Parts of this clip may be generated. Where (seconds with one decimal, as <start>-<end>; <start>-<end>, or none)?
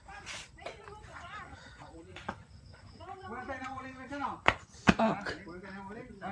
1.1-4.9